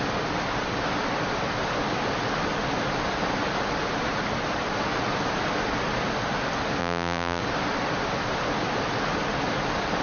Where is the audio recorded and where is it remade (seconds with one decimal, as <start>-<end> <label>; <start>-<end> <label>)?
0.0-6.8 recorded; 6.8-7.4 remade; 7.4-10.0 recorded